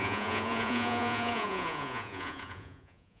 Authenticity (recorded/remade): remade